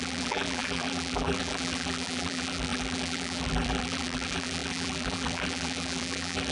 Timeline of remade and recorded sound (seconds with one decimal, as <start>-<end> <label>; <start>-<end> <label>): 0.0-6.5 remade